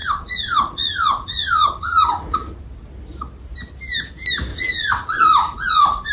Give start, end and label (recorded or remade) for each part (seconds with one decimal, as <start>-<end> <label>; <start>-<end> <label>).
0.0-2.6 remade; 2.6-4.5 recorded; 4.5-6.1 remade